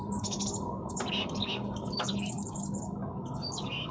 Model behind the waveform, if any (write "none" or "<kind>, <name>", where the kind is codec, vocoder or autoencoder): codec, DAC